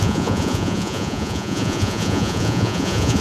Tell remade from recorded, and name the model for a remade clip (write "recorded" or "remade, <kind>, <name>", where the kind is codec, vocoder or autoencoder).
remade, vocoder, Vocos